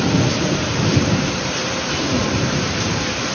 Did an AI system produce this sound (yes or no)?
yes